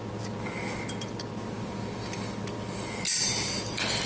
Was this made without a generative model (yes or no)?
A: yes